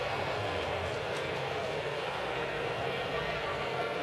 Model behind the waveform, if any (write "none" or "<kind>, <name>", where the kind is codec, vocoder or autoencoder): codec, SNAC